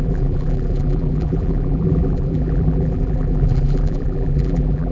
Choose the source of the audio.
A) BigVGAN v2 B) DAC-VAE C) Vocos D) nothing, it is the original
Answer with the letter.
A